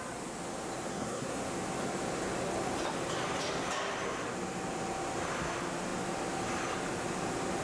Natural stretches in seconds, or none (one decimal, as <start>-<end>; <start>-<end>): 0.0-0.9; 1.4-7.6